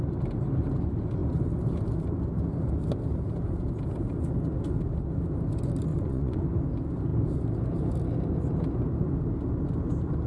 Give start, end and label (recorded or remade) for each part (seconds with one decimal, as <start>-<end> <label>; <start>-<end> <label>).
0.0-5.9 recorded; 5.9-6.4 remade; 6.4-10.3 recorded